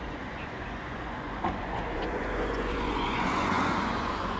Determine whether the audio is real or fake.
fake